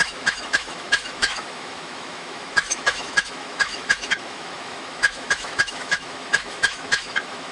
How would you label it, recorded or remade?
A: remade